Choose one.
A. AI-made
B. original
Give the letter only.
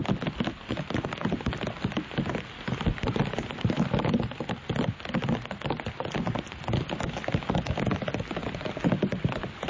B